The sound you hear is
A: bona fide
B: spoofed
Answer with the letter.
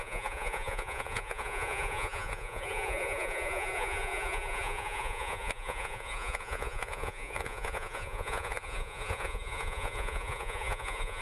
B